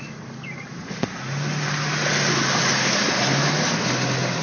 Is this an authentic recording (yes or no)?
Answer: yes